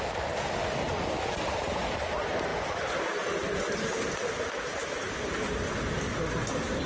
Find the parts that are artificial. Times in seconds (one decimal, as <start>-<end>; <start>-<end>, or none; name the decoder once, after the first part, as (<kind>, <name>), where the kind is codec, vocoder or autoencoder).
none